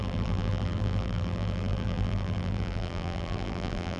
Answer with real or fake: fake